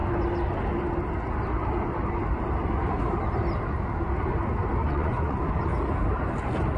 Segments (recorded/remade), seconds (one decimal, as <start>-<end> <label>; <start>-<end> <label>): 0.0-4.8 recorded; 4.8-5.4 remade; 5.4-6.8 recorded